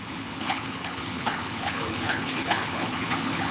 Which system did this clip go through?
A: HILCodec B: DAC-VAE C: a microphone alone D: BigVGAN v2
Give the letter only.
A